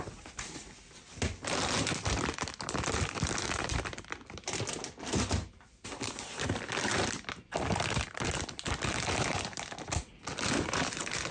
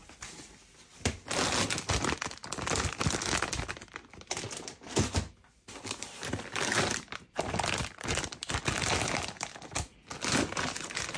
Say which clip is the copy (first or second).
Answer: first